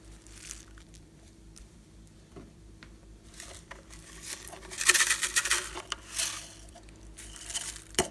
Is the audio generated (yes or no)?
yes